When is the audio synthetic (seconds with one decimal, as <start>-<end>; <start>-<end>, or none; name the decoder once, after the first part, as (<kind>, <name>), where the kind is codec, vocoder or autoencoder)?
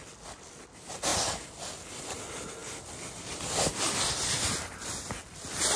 none